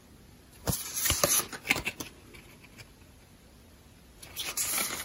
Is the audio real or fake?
real